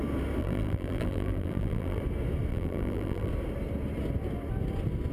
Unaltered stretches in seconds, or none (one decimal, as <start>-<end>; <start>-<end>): 0.0-0.4; 2.0-2.5; 3.3-5.1